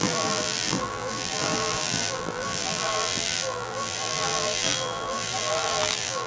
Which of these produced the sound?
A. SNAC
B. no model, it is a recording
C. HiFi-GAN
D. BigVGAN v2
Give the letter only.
D